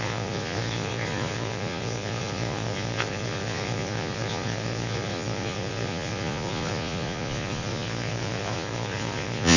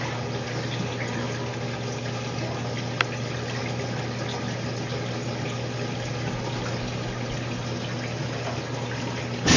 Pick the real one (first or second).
second